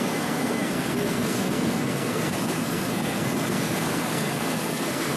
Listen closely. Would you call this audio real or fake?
fake